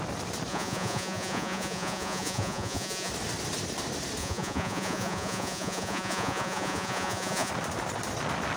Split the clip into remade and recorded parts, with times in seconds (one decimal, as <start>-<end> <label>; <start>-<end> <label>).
0.0-0.5 recorded; 0.5-3.1 remade; 3.1-4.2 recorded; 4.2-7.5 remade; 7.5-8.6 recorded